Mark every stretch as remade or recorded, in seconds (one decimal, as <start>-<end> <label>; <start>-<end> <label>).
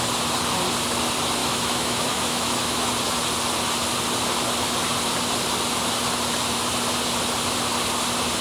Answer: 0.0-1.4 recorded; 1.4-2.9 remade; 2.9-8.4 recorded